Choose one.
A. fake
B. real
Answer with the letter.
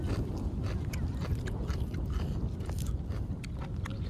B